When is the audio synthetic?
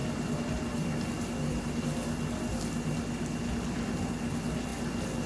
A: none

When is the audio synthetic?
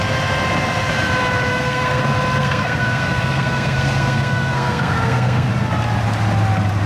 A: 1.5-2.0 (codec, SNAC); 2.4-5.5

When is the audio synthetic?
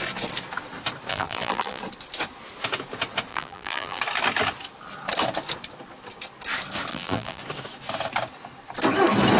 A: 1.1-1.8 (vocoder, BigVGAN v2); 3.3-4.0; 6.9-7.4